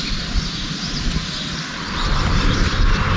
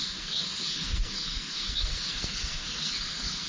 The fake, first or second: second